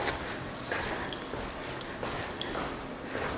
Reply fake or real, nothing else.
real